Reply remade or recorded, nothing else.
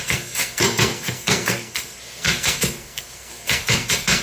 remade